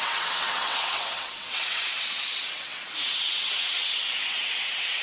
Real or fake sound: fake